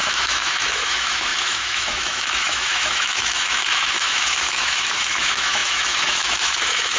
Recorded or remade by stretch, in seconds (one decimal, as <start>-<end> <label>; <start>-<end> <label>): 0.0-7.0 remade